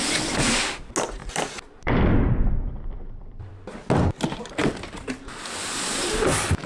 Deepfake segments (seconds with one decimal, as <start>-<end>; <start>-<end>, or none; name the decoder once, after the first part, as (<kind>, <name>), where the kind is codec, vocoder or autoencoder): 0.0-0.6 (vocoder, BigVGAN v2); 1.2-3.5; 4.6-6.7